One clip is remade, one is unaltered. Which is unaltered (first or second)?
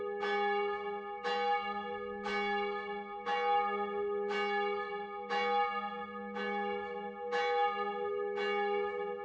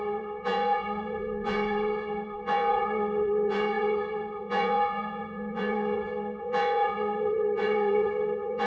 first